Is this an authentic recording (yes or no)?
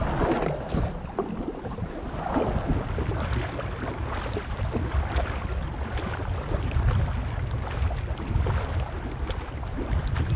yes